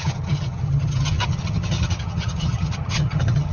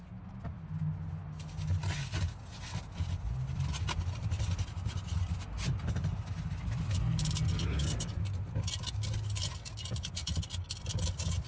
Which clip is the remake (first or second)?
first